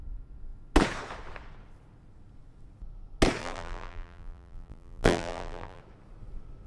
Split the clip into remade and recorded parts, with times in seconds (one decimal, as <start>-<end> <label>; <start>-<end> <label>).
0.0-3.4 recorded; 3.4-5.8 remade; 5.8-6.7 recorded